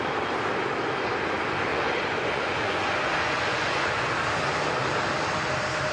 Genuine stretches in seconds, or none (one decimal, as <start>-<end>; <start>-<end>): 0.0-1.7; 4.1-5.9